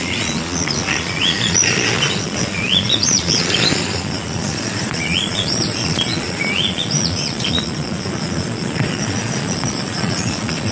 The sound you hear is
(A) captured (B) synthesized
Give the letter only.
B